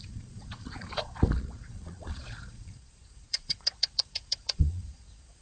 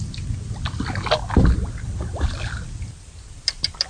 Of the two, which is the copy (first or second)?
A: first